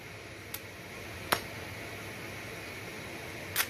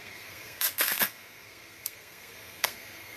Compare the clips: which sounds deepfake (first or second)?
second